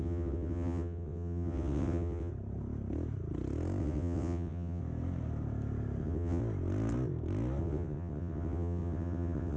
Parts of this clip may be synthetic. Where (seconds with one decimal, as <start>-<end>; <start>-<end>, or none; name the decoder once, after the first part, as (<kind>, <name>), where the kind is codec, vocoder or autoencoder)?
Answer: 0.0-2.3 (vocoder, WaveNeXt); 3.8-4.8; 6.0-6.4; 7.6-9.6